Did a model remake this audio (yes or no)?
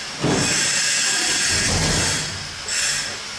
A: no